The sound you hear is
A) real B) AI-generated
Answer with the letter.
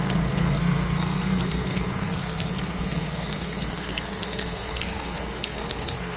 B